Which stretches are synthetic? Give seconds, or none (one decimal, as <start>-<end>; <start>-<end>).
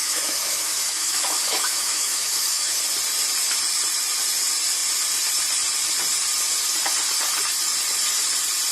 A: 0.0-2.8